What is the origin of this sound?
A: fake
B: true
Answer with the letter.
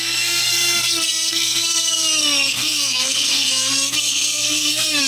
A